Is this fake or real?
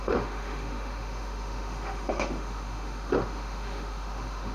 fake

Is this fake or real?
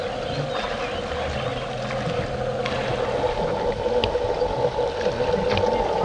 real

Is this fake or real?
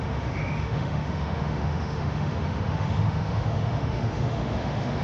fake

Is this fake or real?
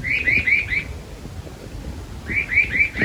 real